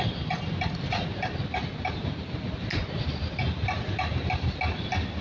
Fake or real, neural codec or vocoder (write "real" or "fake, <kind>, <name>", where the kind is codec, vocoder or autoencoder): real